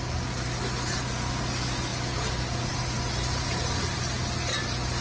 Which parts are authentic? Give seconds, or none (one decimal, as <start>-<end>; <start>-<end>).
0.0-5.0